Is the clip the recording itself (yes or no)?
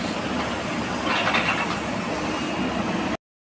yes